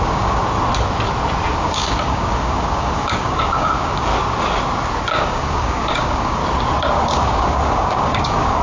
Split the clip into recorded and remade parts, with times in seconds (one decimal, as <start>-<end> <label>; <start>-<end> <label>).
0.0-0.4 remade; 0.4-1.6 recorded; 1.6-4.1 remade; 4.1-5.0 recorded; 5.0-6.4 remade; 6.4-6.9 recorded; 6.9-8.6 remade